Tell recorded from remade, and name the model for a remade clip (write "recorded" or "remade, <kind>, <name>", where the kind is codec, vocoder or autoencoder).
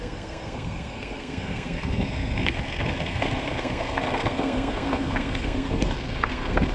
remade, codec, SNAC